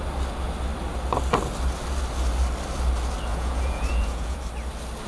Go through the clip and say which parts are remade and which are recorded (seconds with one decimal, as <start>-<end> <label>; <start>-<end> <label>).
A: 0.0-3.3 recorded; 3.3-4.4 remade; 4.4-5.1 recorded